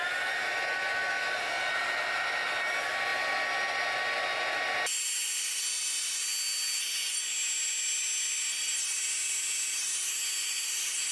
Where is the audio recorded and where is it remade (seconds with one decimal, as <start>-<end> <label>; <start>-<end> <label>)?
0.0-11.1 recorded